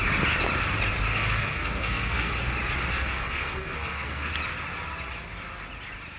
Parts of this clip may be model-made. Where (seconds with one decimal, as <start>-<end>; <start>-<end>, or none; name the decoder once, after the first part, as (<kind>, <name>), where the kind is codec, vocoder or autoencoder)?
1.1-2.3 (codec, SNAC); 2.9-4.3